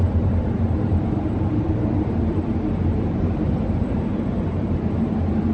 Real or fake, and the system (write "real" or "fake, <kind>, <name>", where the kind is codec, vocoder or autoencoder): fake, vocoder, BigVGAN v2